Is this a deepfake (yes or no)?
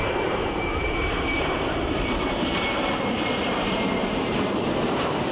yes